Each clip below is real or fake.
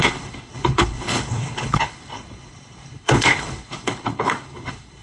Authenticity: fake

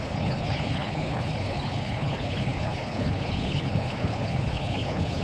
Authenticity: fake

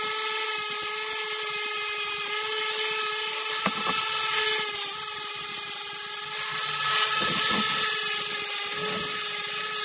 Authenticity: real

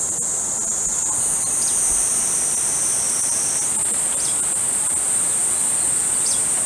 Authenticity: real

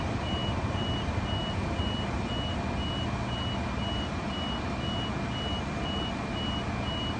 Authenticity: real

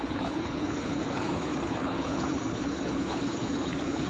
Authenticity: fake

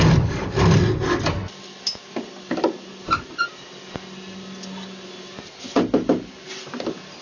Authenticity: real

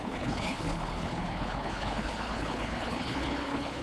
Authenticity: fake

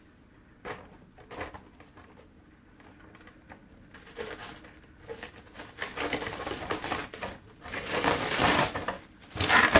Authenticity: real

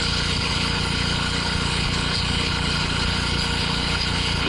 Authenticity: fake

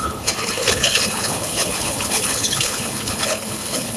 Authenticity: fake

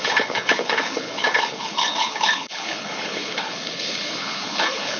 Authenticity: fake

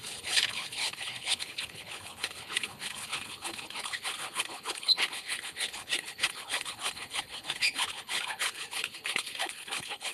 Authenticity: fake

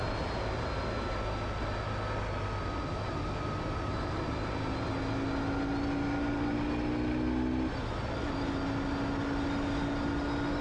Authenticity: real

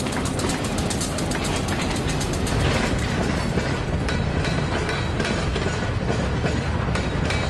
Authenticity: real